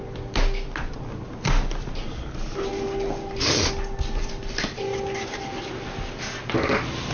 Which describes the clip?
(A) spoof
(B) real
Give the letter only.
B